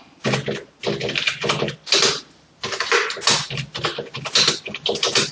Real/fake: real